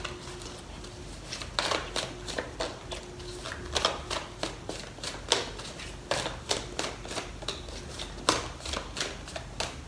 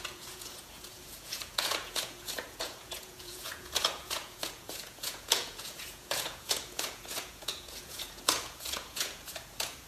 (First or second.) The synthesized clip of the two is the second